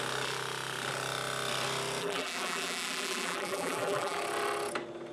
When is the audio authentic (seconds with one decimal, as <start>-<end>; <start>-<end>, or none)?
0.0-2.0; 4.2-5.1